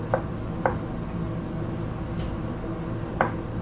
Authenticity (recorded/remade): recorded